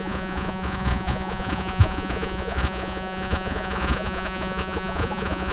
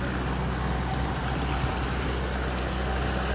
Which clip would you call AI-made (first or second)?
first